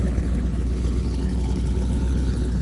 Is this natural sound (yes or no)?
no